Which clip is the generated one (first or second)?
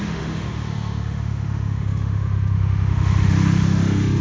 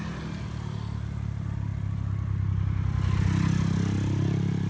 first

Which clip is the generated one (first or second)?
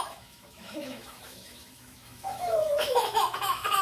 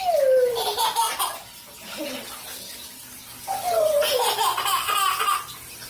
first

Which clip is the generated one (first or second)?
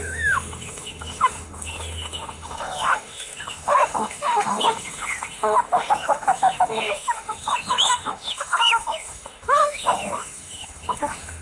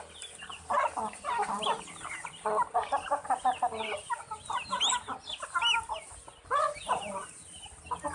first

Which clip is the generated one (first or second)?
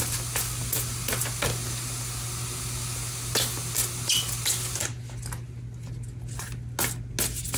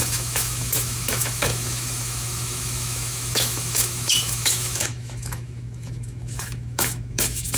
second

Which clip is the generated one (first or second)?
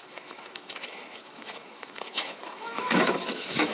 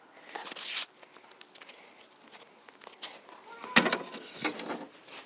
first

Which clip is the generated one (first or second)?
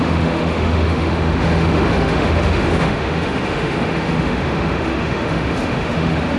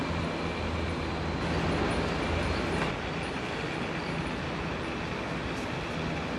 first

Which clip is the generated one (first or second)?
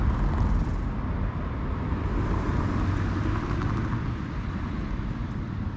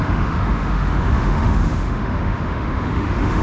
second